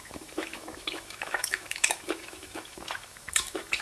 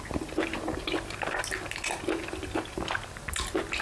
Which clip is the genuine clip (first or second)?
second